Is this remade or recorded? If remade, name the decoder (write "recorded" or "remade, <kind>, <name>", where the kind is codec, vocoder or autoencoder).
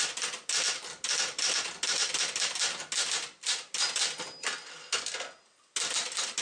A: recorded